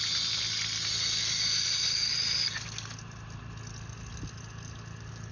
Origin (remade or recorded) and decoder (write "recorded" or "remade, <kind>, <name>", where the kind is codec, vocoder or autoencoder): recorded